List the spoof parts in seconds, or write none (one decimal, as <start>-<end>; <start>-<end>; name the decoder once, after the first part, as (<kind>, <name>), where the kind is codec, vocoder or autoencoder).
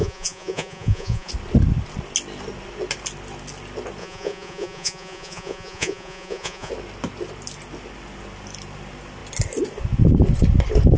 0.0-1.3 (vocoder, Vocos); 4.0-6.7